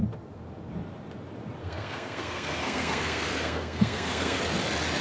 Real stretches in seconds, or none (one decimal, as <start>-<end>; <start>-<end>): 0.0-1.6; 4.4-5.0